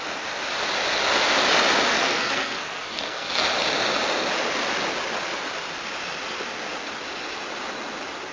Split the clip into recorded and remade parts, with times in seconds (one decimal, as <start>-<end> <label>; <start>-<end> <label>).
0.0-1.9 recorded; 1.9-3.4 remade; 3.4-8.3 recorded